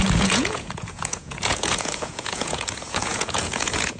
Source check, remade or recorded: remade